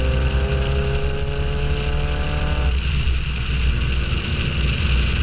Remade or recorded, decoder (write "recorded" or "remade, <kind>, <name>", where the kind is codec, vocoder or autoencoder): recorded